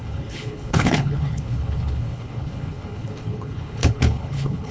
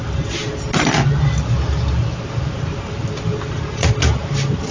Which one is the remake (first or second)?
first